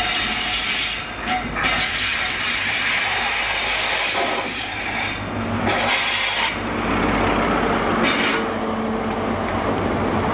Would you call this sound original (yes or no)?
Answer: yes